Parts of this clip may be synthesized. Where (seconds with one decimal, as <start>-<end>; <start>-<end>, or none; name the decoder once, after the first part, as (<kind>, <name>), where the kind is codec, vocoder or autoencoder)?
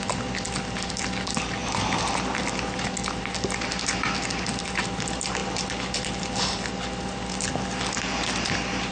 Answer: none